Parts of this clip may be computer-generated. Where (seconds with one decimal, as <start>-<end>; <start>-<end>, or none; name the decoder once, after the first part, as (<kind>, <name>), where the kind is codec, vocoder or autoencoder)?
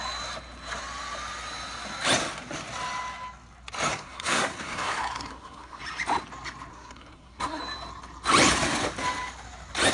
3.9-5.8 (codec, SNAC); 6.7-7.6